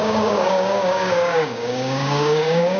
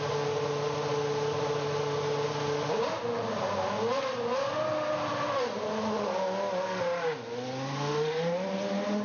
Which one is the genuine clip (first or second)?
second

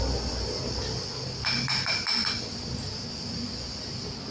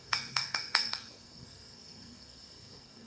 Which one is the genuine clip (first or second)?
first